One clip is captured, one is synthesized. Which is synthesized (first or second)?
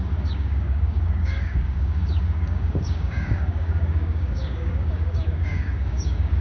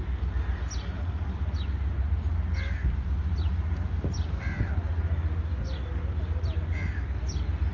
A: first